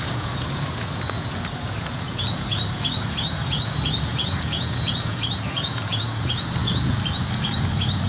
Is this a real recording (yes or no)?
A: no